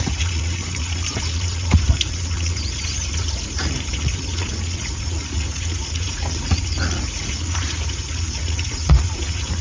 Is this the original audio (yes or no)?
no